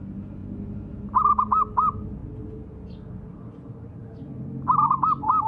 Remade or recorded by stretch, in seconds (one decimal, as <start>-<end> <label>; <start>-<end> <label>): 0.0-5.5 recorded